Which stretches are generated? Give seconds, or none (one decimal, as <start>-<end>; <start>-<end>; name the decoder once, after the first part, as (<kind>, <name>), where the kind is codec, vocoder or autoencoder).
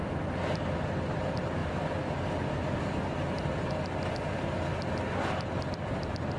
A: none